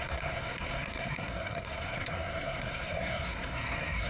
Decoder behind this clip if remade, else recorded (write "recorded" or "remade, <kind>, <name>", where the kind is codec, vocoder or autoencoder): remade, codec, SNAC